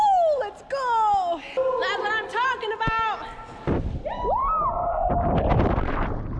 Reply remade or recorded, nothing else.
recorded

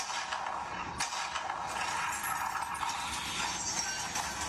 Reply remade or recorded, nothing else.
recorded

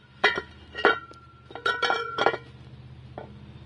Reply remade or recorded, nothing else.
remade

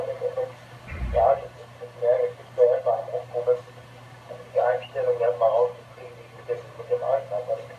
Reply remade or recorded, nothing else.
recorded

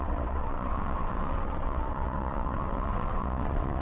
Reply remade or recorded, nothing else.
remade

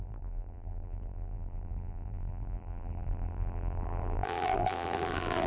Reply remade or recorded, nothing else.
remade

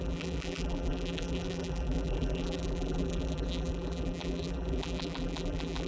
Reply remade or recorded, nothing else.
remade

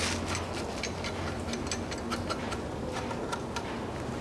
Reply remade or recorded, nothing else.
recorded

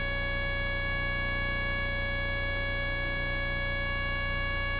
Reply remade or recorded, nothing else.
recorded